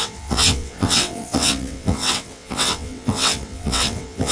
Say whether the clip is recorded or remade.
remade